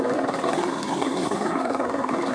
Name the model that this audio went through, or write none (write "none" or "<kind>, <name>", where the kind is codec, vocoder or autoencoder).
codec, SNAC